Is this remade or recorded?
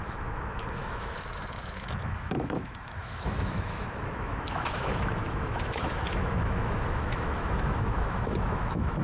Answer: remade